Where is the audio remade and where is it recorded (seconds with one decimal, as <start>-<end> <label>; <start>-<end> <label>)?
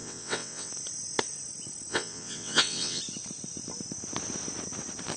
0.0-0.7 remade; 0.7-1.9 recorded; 1.9-3.0 remade; 3.0-5.2 recorded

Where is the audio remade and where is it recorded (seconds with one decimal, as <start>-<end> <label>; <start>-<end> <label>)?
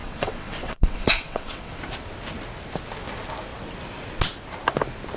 0.0-1.8 remade; 1.8-5.2 recorded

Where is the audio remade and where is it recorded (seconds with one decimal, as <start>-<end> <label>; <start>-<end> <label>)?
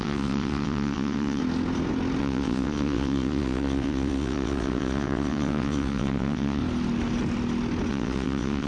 0.0-1.4 remade; 1.4-2.2 recorded; 2.2-6.6 remade; 6.6-7.9 recorded; 7.9-8.7 remade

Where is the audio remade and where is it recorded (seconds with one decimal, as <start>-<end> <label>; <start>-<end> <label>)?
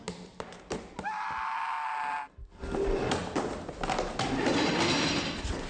0.0-5.7 recorded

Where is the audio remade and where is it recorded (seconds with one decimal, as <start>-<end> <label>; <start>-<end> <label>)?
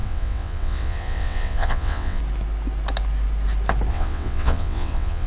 0.0-2.2 remade; 2.2-3.9 recorded; 3.9-5.3 remade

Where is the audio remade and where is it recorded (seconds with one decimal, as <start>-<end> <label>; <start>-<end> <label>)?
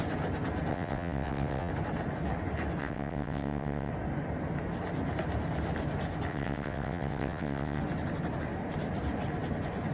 0.0-0.7 recorded; 0.7-1.7 remade; 1.7-2.8 recorded; 2.8-3.9 remade; 3.9-6.3 recorded; 6.3-7.8 remade; 7.8-9.9 recorded